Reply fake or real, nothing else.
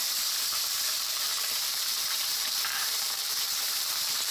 fake